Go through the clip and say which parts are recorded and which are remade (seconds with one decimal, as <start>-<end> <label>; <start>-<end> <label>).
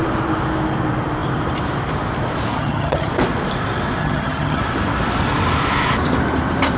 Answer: 0.0-2.5 recorded; 2.5-3.1 remade; 3.1-4.0 recorded; 4.0-4.6 remade; 4.6-6.8 recorded